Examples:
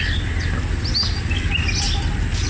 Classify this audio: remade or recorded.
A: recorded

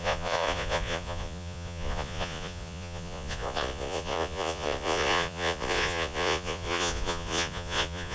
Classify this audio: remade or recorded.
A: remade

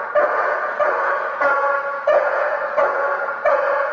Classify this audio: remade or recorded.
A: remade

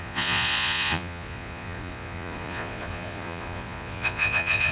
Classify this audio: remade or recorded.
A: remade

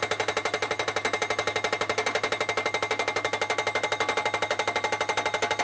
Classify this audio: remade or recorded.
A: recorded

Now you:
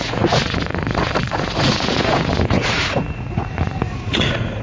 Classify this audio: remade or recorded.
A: remade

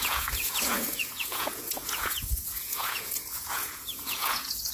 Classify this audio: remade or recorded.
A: remade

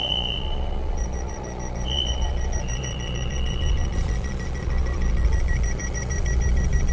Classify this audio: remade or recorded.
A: remade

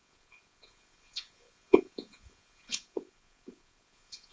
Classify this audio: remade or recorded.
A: remade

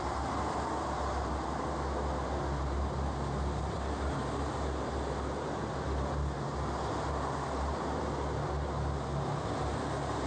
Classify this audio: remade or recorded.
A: recorded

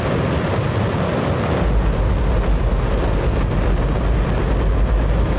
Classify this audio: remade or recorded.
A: recorded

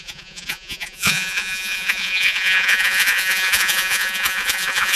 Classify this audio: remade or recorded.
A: remade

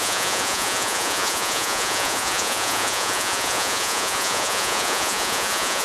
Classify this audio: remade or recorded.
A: remade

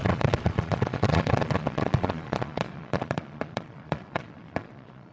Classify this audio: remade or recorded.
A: remade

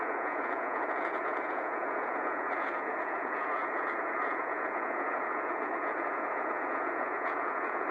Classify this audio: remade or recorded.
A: remade